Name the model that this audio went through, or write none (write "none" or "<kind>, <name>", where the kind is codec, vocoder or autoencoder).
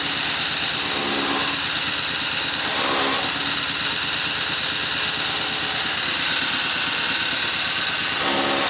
none